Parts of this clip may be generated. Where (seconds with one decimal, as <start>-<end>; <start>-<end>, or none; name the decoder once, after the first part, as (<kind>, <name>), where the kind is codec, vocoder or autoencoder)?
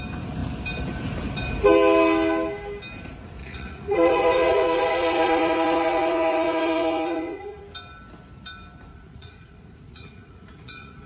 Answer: 3.4-7.6 (vocoder, Vocos); 8.9-11.1